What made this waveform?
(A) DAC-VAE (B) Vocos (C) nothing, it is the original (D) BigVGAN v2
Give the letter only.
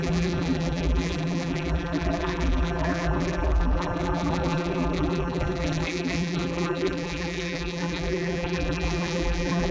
D